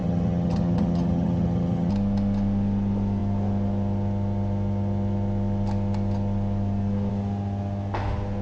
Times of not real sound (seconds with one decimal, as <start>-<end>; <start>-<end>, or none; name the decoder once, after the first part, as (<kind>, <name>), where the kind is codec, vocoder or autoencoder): 0.0-1.9 (vocoder, HiFi-GAN)